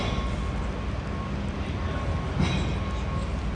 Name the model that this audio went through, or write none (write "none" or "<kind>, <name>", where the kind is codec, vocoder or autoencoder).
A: none